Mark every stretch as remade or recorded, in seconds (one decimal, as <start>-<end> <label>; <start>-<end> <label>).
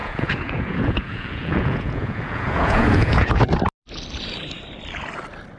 0.0-3.4 remade; 3.4-5.6 recorded